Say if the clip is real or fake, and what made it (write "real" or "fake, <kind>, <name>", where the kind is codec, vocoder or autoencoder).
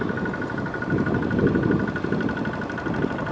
real